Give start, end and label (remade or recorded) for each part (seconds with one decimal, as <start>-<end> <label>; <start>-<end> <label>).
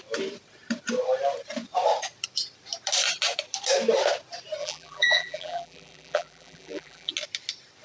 0.0-4.6 recorded; 4.6-7.1 remade; 7.1-7.8 recorded